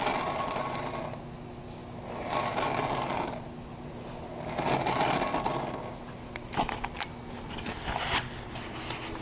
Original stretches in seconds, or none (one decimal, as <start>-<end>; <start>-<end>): 0.0-9.2